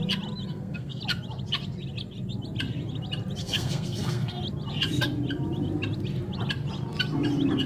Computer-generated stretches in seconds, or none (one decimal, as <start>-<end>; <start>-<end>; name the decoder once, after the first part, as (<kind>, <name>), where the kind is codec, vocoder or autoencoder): 0.5-1.0 (codec, SNAC); 3.4-4.4